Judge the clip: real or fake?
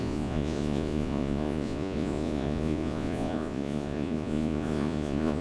fake